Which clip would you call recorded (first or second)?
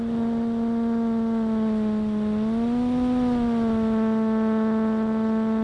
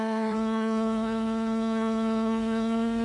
first